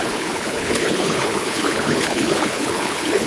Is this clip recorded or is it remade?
remade